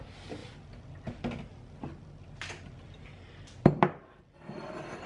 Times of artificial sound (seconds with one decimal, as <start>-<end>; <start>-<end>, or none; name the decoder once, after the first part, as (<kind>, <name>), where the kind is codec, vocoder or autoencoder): none